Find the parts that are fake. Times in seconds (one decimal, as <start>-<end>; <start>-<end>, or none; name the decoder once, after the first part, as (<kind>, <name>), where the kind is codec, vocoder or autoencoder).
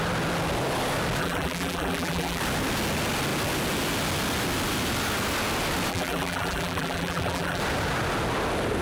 1.2-2.4 (vocoder, BigVGAN v2); 5.9-7.6